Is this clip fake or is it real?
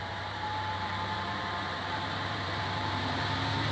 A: fake